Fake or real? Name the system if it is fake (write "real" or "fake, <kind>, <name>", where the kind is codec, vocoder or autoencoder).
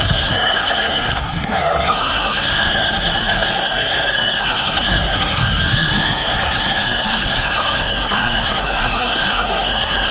fake, codec, SNAC